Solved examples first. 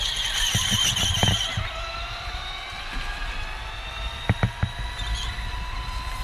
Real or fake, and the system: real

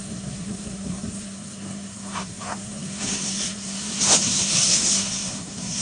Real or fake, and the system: fake, codec, SNAC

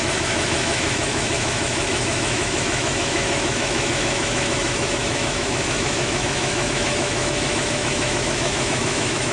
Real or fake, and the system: fake, autoencoder, DAC-VAE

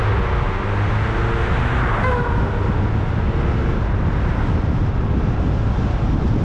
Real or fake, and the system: real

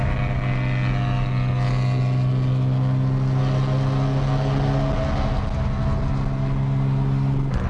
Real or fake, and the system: real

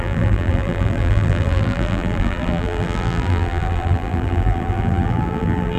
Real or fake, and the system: fake, vocoder, BigVGAN v2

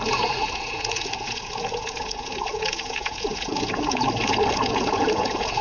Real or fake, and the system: fake, vocoder, Vocos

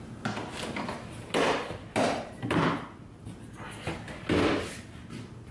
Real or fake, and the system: real